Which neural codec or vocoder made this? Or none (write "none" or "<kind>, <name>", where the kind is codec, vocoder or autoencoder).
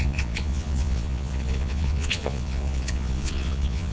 vocoder, Vocos